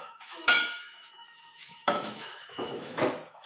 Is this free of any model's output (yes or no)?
no